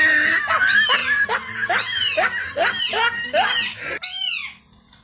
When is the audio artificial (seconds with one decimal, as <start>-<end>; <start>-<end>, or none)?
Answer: none